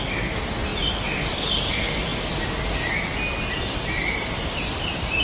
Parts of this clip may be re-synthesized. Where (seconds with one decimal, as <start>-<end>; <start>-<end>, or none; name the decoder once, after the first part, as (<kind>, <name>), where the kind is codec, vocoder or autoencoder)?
none